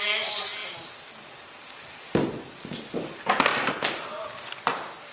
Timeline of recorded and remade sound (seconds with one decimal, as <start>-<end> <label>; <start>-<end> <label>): 0.0-5.1 recorded